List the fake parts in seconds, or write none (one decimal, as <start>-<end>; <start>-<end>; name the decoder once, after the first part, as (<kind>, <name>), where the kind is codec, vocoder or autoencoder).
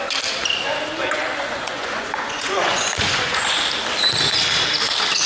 1.0-3.6 (vocoder, Vocos)